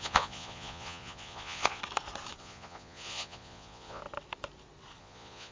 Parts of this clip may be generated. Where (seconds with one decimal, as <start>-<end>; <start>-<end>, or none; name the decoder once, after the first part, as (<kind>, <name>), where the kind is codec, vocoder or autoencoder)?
0.0-1.8 (vocoder, Vocos); 2.4-4.0; 5.0-5.5